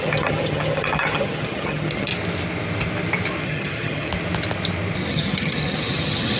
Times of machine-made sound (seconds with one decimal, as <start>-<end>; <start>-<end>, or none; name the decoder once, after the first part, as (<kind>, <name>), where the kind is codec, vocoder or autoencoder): 0.0-2.1 (vocoder, HiFi-GAN); 3.4-4.1; 5.1-6.4